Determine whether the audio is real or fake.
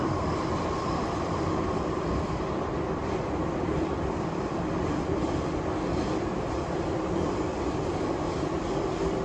fake